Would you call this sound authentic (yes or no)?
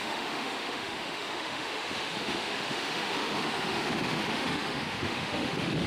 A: no